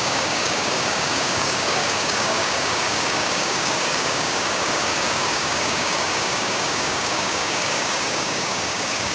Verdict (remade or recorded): remade